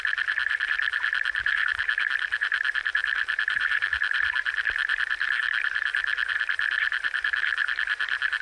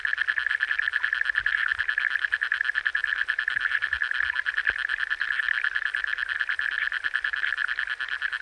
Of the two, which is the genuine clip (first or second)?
second